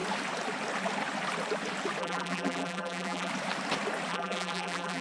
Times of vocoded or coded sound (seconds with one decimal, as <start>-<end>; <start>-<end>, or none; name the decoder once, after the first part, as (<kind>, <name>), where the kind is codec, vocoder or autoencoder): 2.0-3.3 (vocoder, BigVGAN v2); 4.1-5.0